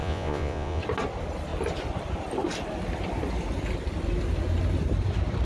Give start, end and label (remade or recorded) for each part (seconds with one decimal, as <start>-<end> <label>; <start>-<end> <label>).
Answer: 0.0-0.8 remade; 0.8-5.5 recorded